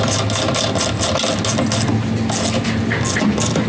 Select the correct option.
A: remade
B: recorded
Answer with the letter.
B